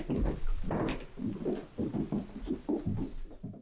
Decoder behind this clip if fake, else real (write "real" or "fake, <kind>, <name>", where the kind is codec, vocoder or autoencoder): real